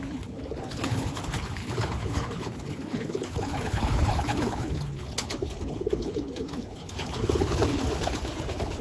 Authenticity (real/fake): fake